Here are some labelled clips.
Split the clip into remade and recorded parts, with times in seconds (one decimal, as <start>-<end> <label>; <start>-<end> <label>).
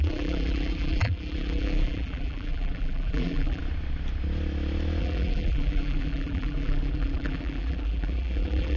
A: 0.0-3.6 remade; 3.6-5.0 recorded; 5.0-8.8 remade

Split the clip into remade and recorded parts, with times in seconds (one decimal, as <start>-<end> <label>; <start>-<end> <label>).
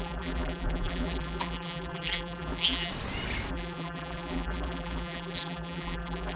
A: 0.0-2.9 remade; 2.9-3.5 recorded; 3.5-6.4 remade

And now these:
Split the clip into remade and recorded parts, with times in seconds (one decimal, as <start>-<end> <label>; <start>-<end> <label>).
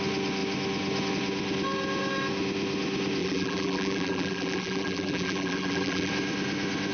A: 0.0-3.2 recorded; 3.2-6.1 remade; 6.1-6.9 recorded